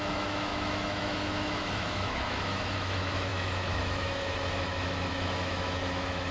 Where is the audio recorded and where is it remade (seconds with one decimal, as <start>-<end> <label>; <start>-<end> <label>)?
0.0-6.3 remade